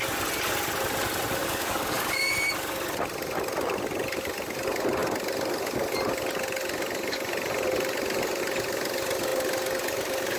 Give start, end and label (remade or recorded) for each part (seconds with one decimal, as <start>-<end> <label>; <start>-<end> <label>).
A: 0.0-1.4 recorded; 1.4-2.3 remade; 2.3-10.4 recorded

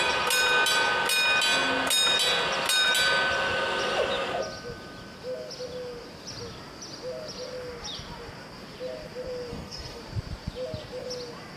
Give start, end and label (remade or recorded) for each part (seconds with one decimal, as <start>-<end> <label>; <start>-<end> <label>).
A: 0.0-9.5 recorded; 9.5-10.0 remade; 10.0-11.6 recorded